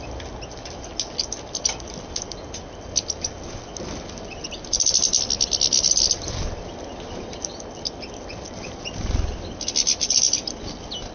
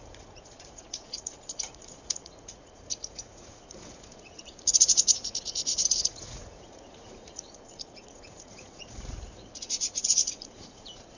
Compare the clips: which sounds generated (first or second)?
second